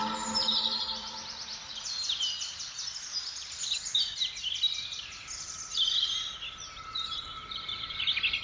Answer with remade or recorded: recorded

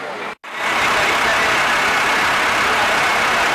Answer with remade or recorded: recorded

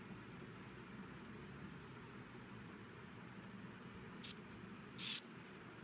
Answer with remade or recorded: recorded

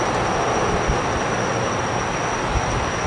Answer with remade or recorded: recorded